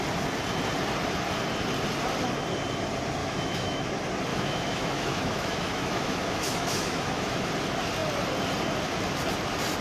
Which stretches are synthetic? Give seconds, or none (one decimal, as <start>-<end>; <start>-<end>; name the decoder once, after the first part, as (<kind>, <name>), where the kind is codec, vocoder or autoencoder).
3.2-3.9 (autoencoder, DAC-VAE); 4.3-7.5

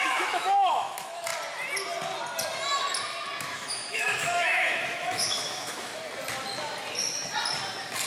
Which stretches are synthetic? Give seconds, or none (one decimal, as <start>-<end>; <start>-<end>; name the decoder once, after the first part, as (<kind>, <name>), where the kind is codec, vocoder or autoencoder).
0.0-1.3 (autoencoder, DAC-VAE); 3.4-5.9

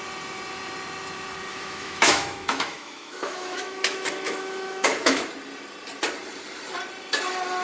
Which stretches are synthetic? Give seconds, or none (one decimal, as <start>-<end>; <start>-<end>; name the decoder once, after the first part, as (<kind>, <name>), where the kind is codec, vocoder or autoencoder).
1.5-5.3 (autoencoder, DAC-VAE)